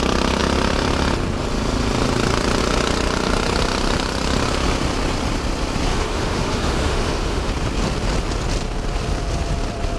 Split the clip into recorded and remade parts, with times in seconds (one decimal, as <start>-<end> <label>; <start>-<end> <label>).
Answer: 0.0-5.9 recorded; 5.9-7.5 remade; 7.5-10.0 recorded